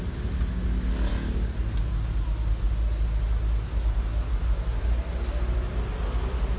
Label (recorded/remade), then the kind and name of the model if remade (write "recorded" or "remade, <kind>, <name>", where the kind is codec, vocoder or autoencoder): recorded